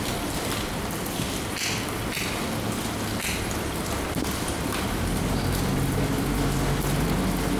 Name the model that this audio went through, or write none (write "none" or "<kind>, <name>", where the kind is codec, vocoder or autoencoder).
none